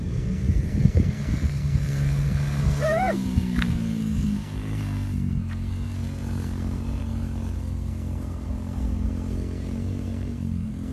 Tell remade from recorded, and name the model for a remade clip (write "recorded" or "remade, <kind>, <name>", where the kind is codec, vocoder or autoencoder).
remade, codec, SNAC